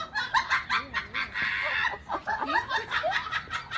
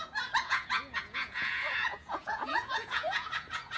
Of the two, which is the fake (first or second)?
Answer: second